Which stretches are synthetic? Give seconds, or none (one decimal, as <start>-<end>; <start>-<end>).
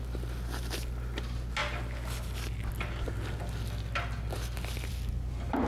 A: none